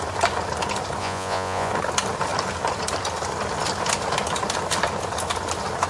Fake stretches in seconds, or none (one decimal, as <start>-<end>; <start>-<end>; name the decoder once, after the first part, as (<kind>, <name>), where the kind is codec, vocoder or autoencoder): 1.0-1.7 (vocoder, Vocos)